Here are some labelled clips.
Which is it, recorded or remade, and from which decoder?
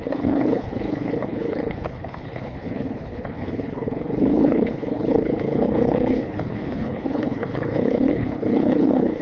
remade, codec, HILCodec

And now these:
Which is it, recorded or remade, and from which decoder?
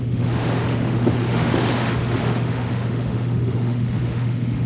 remade, autoencoder, DAC-VAE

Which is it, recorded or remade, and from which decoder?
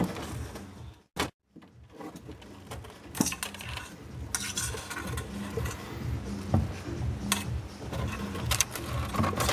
recorded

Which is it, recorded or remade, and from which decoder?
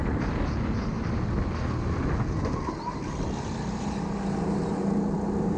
recorded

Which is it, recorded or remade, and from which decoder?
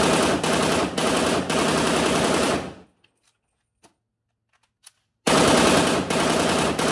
recorded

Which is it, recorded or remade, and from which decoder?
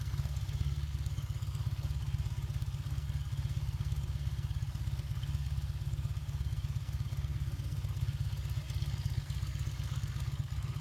remade, codec, SNAC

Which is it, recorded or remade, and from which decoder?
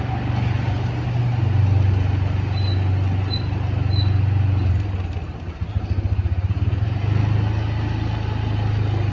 recorded